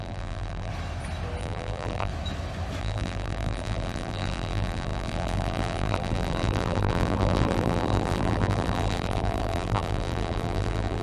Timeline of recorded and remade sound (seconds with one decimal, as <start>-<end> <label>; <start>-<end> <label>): 0.0-0.7 remade; 0.7-1.4 recorded; 1.4-2.1 remade; 2.1-2.8 recorded; 2.8-11.0 remade